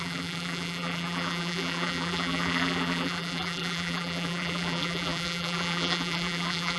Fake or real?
fake